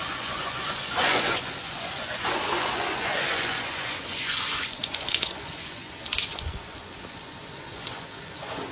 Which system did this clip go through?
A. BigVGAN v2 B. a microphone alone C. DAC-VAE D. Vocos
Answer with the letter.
D